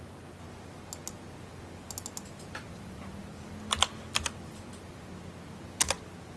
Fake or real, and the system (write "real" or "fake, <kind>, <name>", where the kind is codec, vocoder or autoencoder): real